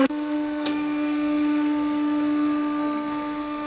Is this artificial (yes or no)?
yes